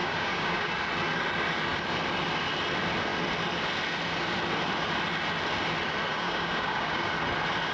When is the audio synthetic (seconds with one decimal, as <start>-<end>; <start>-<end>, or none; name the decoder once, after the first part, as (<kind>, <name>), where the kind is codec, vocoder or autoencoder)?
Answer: 0.0-0.7 (codec, DAC); 6.1-7.1